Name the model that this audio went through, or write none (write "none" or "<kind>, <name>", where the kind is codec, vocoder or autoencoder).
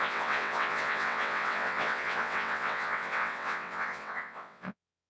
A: vocoder, WaveNeXt